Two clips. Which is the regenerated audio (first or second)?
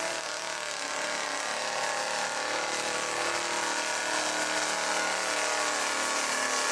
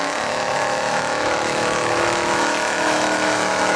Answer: second